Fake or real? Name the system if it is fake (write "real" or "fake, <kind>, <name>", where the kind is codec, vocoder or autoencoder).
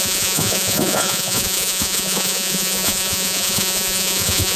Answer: fake, vocoder, Vocos